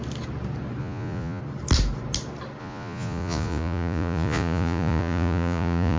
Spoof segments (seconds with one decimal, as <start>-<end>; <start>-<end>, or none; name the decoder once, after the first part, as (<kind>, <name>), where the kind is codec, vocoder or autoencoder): 0.8-1.4 (vocoder, Vocos); 2.6-6.0